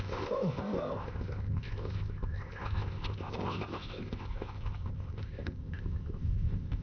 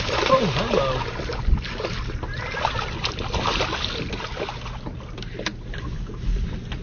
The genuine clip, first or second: second